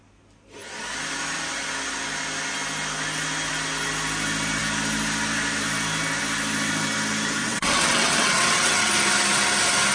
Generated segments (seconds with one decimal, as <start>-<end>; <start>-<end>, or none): 7.4-8.9